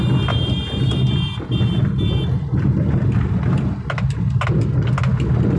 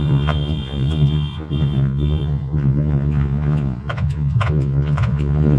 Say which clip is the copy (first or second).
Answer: second